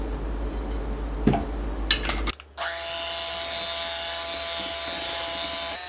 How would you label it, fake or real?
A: real